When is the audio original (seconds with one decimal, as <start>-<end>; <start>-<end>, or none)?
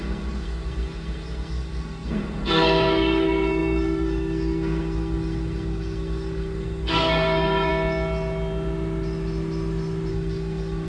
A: 7.7-10.1